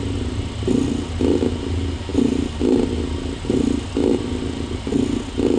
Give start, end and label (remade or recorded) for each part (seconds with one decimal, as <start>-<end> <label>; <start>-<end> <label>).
0.0-5.6 recorded